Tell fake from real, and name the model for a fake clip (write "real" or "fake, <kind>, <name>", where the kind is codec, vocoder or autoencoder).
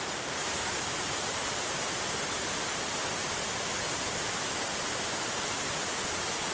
fake, vocoder, BigVGAN v2